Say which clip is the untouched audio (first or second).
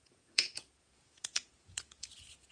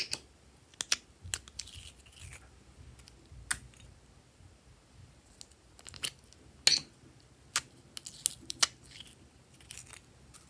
second